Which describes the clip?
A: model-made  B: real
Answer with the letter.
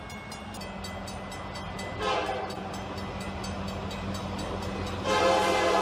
B